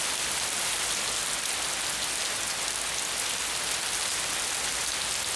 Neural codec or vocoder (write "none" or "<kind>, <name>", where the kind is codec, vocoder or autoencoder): none